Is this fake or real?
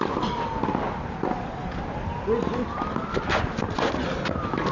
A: real